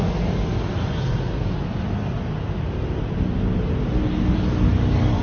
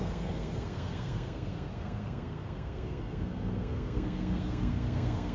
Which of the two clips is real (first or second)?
first